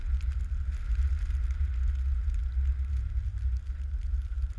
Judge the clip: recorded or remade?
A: recorded